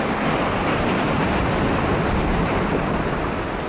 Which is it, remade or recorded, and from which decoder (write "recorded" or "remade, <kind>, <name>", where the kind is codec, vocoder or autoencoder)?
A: recorded